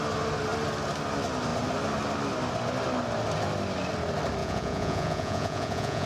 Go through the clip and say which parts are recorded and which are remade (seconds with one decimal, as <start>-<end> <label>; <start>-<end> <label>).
0.0-4.4 recorded; 4.4-6.1 remade